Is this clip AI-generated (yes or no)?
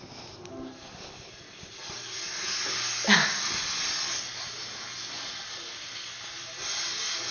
no